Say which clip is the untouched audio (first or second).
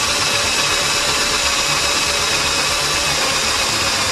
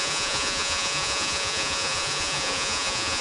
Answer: first